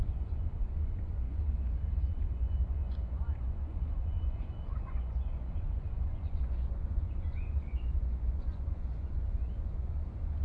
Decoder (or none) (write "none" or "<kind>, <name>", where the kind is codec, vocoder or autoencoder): vocoder, Vocos